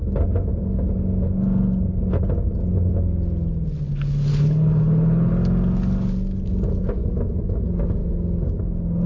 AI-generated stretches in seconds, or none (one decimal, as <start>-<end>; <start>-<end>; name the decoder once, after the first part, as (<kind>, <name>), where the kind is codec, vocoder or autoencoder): 4.3-5.3 (codec, HILCodec)

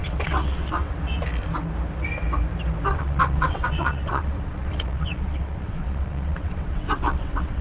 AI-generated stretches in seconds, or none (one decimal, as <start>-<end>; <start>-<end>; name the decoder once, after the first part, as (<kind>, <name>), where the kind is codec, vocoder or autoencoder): 0.0-0.9 (vocoder, WaveNeXt); 2.9-7.6

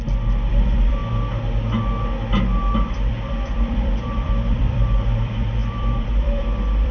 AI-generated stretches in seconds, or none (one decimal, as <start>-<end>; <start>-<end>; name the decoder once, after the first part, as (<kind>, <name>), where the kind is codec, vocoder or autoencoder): 0.0-1.0 (vocoder, BigVGAN v2); 2.9-6.9

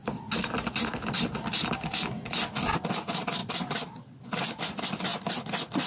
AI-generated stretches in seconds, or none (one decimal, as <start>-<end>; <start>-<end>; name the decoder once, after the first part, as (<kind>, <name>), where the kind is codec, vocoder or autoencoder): none

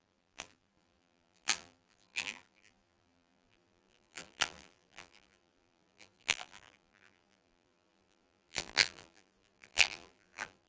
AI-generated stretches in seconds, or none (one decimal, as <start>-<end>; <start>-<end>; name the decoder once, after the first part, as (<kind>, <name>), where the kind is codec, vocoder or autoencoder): 0.0-10.7 (vocoder, BigVGAN v2)